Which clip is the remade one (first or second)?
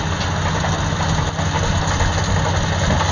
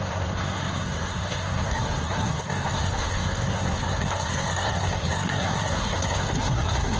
second